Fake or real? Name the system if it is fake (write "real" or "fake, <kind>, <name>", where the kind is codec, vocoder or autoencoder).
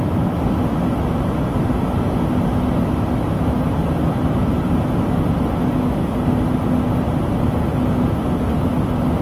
real